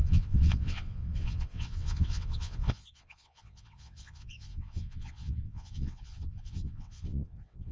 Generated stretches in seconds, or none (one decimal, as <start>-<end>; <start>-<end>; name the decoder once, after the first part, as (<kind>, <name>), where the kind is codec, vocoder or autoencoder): 0.0-7.7 (vocoder, WaveNeXt)